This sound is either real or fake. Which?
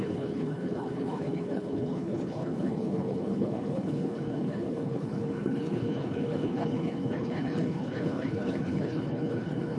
fake